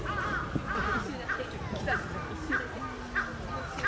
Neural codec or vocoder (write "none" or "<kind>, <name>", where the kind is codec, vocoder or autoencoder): none